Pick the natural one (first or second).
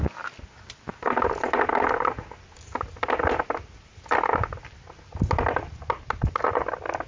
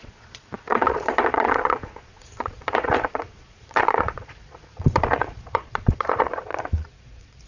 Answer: first